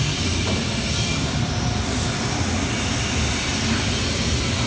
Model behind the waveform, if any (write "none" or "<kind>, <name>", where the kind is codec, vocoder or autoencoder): none